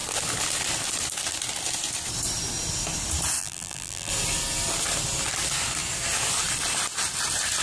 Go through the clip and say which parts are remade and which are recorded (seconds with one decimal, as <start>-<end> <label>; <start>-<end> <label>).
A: 0.0-3.4 recorded; 3.4-4.1 remade; 4.1-7.6 recorded